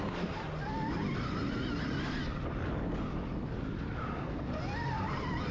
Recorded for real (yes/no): yes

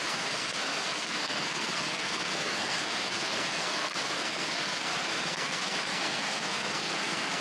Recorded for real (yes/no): no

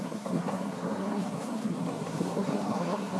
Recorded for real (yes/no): no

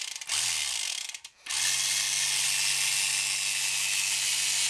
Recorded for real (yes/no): yes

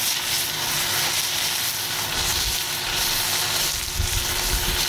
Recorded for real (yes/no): yes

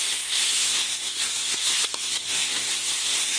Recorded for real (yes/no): no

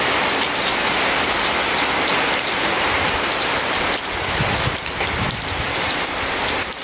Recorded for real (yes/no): yes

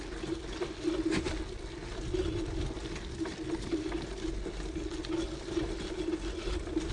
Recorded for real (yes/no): yes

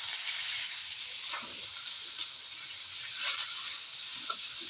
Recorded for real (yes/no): yes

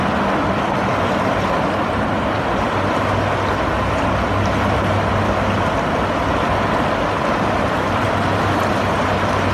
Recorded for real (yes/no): yes